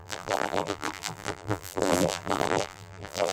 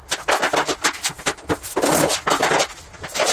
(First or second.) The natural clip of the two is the second